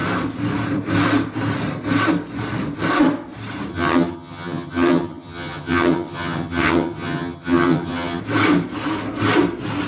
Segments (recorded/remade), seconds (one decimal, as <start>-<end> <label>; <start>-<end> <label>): 0.0-3.7 recorded; 3.7-8.2 remade; 8.2-9.9 recorded